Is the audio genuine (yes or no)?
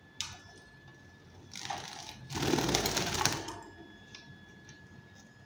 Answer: yes